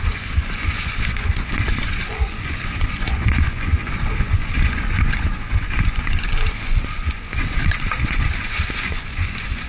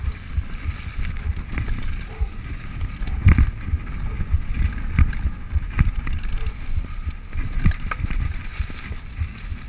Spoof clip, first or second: first